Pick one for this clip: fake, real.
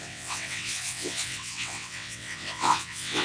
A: fake